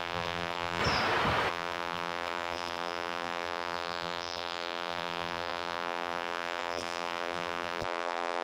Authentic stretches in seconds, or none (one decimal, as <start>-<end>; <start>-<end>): 0.8-1.5